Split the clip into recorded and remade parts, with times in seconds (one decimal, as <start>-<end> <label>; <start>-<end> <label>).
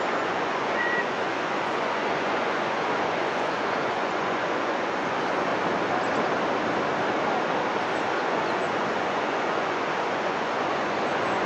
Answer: 0.0-5.5 remade; 5.5-8.2 recorded; 8.2-11.5 remade